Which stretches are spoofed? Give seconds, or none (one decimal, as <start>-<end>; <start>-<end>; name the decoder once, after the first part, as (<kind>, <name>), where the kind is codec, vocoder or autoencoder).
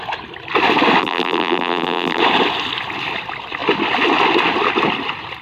1.0-2.2 (vocoder, BigVGAN v2)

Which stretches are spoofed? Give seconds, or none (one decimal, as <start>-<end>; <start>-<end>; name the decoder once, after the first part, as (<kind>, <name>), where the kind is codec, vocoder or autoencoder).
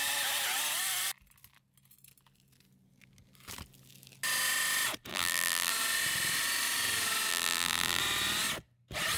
5.1-5.7 (vocoder, BigVGAN v2); 7.3-8.0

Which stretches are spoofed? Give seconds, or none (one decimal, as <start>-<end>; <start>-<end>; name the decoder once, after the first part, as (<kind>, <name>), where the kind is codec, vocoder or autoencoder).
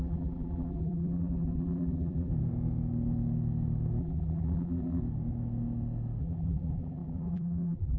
0.0-2.3 (vocoder, BigVGAN v2); 4.0-5.0; 6.2-8.0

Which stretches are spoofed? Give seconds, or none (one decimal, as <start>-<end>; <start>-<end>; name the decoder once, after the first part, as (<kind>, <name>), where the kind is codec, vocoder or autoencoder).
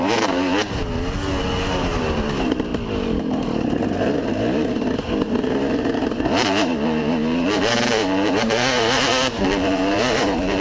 0.0-0.8 (vocoder, BigVGAN v2); 1.7-2.7; 3.2-10.6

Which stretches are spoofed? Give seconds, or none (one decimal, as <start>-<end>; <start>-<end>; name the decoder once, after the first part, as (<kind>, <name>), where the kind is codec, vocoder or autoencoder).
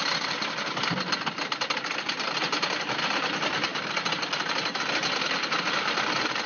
0.0-1.1 (vocoder, BigVGAN v2)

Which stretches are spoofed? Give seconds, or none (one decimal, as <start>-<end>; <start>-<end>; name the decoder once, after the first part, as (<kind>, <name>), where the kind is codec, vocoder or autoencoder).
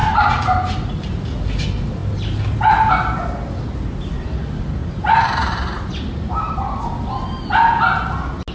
4.8-6.8 (vocoder, BigVGAN v2)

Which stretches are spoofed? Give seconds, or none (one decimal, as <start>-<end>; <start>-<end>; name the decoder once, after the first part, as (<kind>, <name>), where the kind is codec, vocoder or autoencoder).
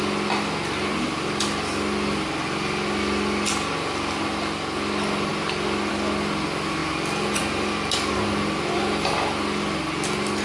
none